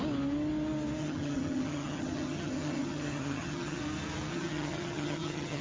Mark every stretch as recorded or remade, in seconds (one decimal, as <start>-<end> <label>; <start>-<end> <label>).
0.0-1.0 recorded; 1.0-3.8 remade; 3.8-4.3 recorded; 4.3-5.6 remade

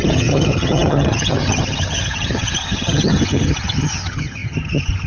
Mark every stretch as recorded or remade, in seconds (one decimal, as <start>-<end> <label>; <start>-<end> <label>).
0.0-5.1 remade